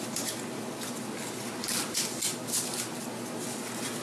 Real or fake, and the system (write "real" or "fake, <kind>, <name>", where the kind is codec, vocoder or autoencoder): real